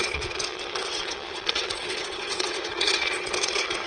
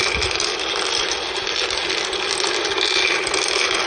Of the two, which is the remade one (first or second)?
first